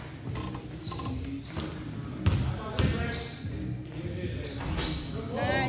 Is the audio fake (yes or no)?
no